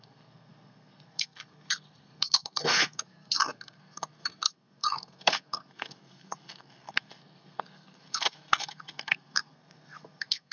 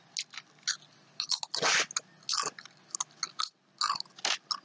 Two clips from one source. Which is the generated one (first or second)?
first